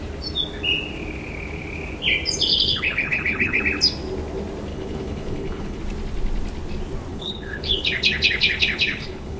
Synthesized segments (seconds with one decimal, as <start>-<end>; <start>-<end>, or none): 2.5-3.6; 4.7-5.8; 7.1-9.4